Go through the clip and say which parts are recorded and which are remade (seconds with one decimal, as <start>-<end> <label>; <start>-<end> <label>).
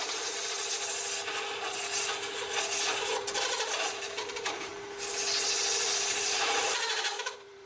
0.0-0.6 remade; 0.6-3.7 recorded; 3.7-4.7 remade; 4.7-6.0 recorded; 6.0-7.7 remade